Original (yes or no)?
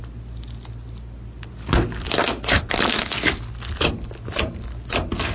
yes